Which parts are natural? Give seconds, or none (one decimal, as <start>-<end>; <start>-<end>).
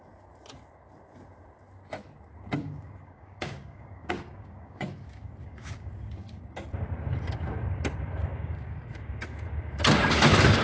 0.0-2.6; 6.4-8.2; 9.2-10.6